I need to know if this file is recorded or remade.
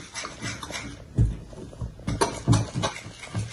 recorded